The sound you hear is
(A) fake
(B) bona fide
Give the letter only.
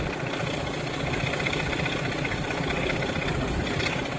B